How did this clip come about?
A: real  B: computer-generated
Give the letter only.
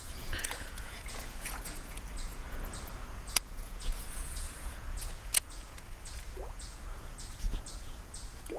B